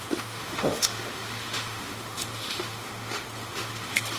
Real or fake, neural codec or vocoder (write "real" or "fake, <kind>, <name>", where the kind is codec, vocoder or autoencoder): fake, autoencoder, DAC-VAE